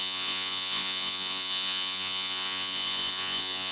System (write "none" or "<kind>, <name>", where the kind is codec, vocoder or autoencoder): vocoder, Vocos